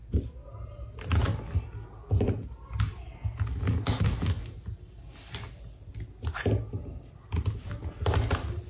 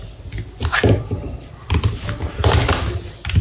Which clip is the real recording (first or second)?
first